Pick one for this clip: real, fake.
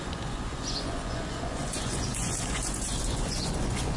fake